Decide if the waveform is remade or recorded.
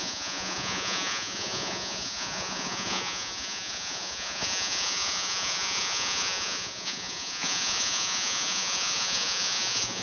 remade